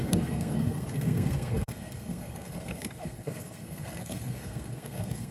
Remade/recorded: remade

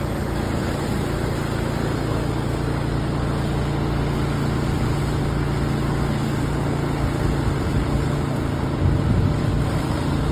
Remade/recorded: recorded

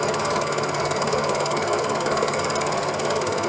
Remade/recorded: remade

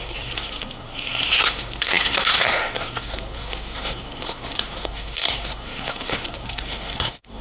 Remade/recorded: remade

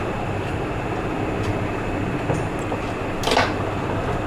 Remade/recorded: recorded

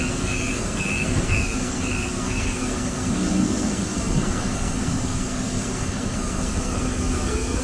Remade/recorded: remade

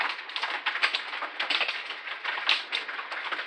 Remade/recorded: recorded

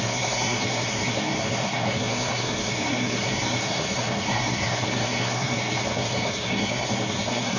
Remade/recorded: remade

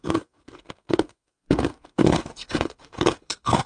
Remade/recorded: remade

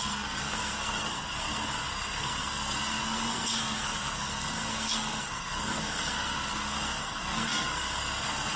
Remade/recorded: remade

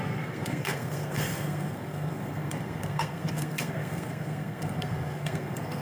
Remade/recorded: remade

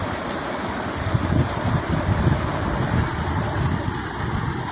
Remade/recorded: recorded